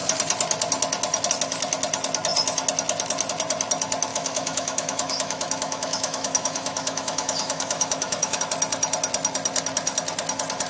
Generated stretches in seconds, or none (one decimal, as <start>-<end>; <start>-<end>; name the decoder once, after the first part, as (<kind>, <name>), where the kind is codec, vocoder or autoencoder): 4.1-8.4 (autoencoder, DAC-VAE)